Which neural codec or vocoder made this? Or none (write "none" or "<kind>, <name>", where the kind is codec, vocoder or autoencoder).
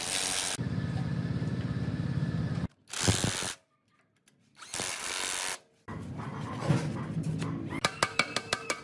none